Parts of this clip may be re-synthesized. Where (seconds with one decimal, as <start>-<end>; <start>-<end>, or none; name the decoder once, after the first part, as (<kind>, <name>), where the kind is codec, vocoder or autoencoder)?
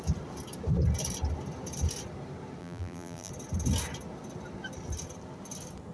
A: 2.6-3.3 (vocoder, BigVGAN v2)